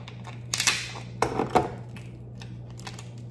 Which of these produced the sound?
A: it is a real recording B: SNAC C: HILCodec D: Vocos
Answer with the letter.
A